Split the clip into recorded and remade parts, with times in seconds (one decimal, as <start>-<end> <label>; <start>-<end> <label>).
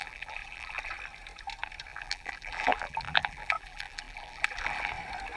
0.0-0.8 remade; 0.8-1.9 recorded; 1.9-4.9 remade; 4.9-5.4 recorded